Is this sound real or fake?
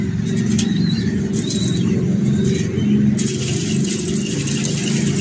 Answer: real